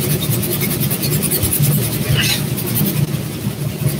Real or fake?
real